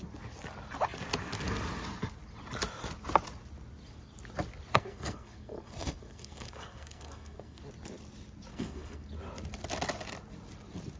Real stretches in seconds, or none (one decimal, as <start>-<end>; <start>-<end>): 0.0-4.7; 7.6-8.5; 9.1-11.0